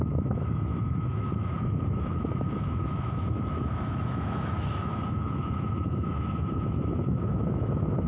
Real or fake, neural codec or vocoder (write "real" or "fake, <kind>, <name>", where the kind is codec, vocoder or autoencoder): fake, autoencoder, DAC-VAE